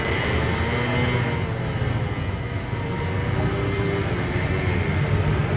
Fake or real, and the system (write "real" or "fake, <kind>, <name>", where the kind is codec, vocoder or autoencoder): real